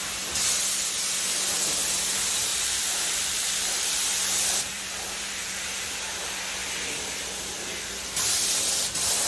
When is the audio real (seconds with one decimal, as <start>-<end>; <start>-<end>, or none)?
0.0-2.5; 5.6-9.3